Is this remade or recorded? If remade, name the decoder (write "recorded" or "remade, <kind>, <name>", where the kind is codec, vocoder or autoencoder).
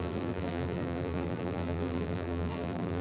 remade, vocoder, BigVGAN v2